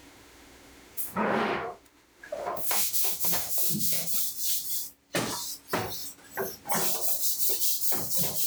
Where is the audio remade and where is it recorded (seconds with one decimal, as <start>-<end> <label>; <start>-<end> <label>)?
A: 0.0-4.1 remade; 4.1-8.5 recorded